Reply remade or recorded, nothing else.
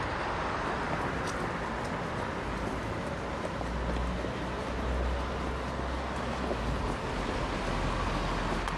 recorded